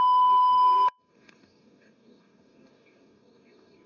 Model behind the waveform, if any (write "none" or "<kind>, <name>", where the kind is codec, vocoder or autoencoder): codec, DAC